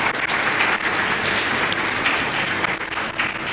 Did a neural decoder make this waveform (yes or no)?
no